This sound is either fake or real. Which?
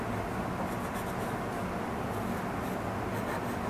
real